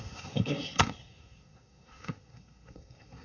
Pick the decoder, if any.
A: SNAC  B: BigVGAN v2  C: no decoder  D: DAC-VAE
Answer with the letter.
A